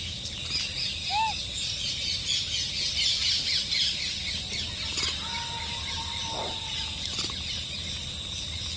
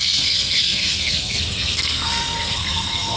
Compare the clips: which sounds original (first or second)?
first